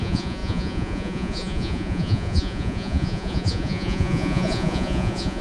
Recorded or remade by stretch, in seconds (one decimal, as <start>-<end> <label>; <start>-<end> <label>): 0.0-5.4 remade